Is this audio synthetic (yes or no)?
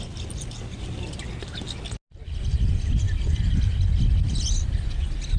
no